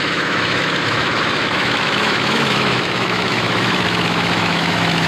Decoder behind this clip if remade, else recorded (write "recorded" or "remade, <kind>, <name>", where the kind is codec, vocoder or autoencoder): remade, autoencoder, DAC-VAE